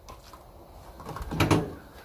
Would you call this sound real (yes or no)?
yes